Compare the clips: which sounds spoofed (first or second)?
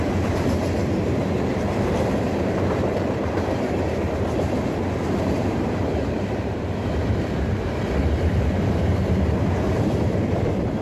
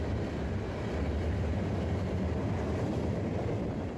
first